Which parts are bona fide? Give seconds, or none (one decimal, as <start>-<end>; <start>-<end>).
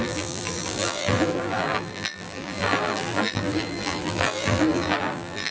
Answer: none